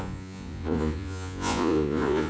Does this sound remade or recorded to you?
remade